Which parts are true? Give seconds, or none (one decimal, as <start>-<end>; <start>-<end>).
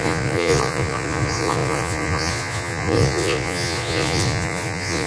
none